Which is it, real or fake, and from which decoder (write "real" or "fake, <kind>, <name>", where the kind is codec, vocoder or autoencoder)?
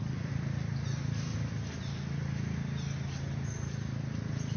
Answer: real